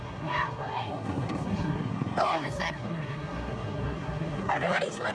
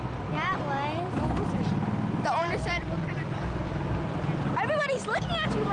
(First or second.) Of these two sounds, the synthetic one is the first